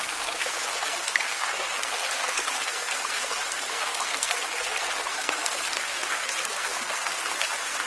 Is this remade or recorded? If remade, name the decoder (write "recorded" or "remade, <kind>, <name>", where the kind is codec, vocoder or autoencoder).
remade, codec, SNAC